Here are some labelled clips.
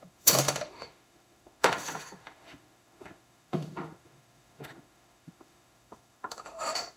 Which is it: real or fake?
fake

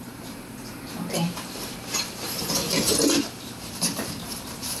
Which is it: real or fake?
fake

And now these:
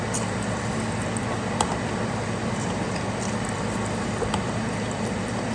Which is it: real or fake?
fake